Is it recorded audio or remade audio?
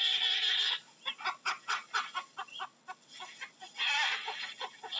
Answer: recorded